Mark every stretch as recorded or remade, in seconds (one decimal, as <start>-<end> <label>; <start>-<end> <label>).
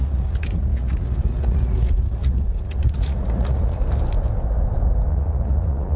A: 0.0-3.8 remade; 3.8-5.1 recorded; 5.1-6.0 remade